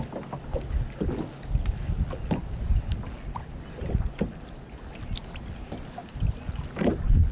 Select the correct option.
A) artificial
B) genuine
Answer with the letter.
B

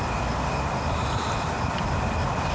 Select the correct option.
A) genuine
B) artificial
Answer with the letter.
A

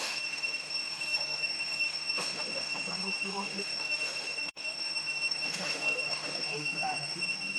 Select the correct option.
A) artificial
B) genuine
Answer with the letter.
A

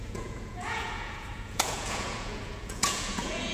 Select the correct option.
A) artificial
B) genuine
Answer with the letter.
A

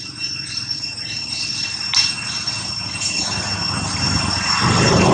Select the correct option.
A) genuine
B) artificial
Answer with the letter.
A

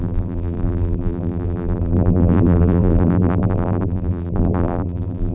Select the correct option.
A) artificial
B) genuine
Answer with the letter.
A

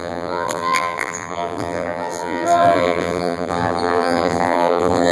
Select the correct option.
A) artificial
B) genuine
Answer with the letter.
A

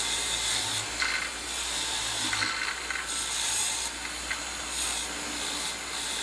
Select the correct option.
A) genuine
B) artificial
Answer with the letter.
A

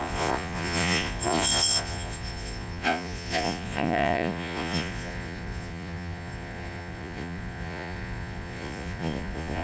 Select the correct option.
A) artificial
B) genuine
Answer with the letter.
A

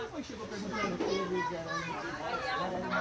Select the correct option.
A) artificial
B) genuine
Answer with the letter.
A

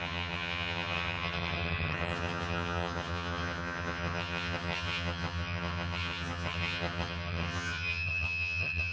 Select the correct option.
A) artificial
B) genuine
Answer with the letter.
A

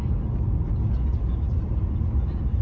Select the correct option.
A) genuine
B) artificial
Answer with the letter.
A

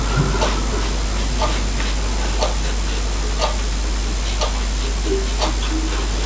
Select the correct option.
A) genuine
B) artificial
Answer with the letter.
A